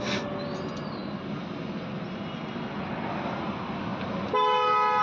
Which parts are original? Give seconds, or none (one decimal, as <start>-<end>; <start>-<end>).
0.0-5.0